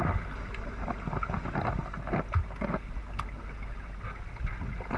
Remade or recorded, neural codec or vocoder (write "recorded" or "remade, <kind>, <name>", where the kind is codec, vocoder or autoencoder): recorded